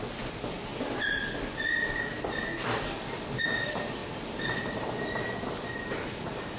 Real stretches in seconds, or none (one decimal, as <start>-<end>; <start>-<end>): 0.0-6.6